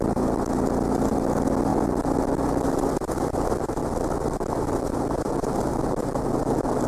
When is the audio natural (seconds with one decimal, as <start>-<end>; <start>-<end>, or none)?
0.0-6.9

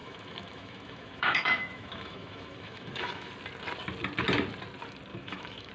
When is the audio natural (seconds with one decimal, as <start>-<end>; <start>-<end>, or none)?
3.3-5.1